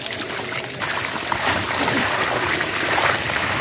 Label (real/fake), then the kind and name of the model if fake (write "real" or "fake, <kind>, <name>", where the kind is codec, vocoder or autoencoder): real